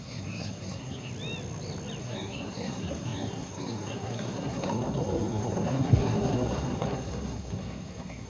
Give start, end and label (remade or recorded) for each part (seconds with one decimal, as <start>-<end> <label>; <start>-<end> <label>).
0.0-1.1 remade; 1.1-2.0 recorded; 2.0-8.3 remade